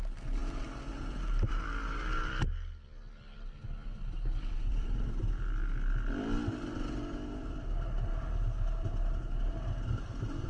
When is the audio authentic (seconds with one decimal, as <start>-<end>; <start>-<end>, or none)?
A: 0.0-4.7; 5.2-10.5